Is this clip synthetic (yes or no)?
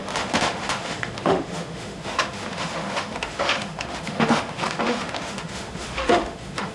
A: yes